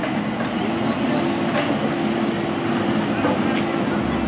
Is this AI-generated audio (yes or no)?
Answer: no